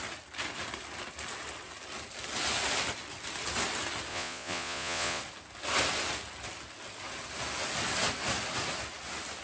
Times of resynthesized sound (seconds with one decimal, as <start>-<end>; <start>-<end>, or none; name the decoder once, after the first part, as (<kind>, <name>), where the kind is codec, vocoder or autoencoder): 4.1-5.2 (vocoder, Vocos)